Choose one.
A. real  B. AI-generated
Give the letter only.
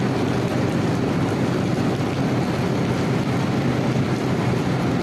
A